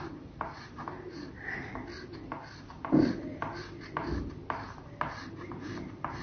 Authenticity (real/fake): real